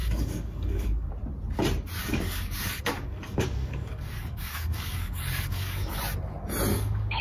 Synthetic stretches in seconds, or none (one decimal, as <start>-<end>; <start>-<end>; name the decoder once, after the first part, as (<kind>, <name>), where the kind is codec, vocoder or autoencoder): 0.0-1.1 (codec, DAC); 2.0-6.0; 6.7-7.2